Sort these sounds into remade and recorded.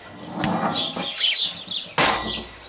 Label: recorded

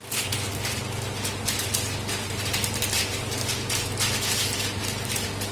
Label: recorded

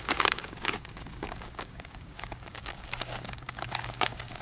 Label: remade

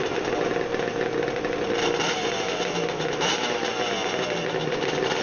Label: recorded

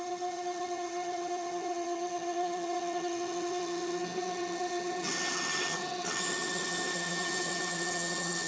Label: remade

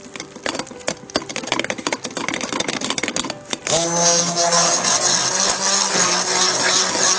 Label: recorded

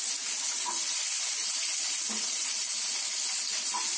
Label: recorded